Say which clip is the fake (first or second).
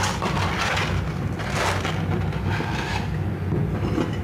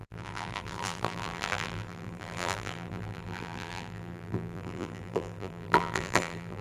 second